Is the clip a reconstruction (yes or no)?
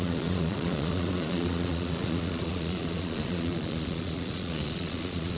yes